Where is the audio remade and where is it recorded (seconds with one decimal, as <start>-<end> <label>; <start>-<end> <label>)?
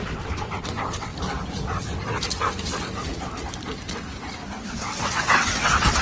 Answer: 0.0-1.1 remade; 1.1-4.7 recorded; 4.7-6.0 remade